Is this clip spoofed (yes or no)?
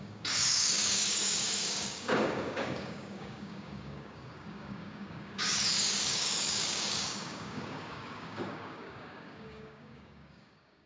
yes